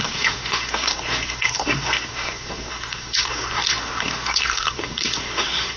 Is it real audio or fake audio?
fake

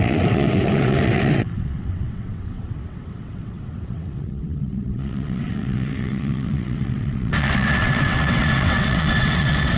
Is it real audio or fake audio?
fake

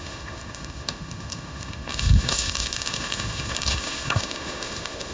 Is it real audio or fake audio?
fake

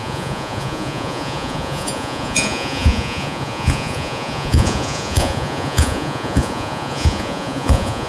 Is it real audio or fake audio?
fake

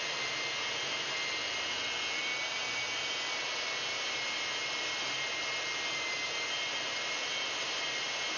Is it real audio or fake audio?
real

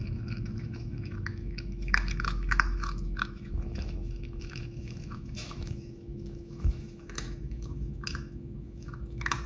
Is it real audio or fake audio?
fake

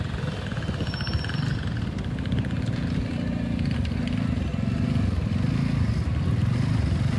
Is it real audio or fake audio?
real